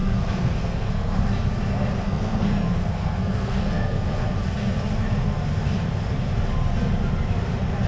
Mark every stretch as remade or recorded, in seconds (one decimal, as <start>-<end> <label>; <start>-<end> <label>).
0.0-1.2 remade; 1.2-2.0 recorded; 2.0-4.4 remade; 4.4-7.9 recorded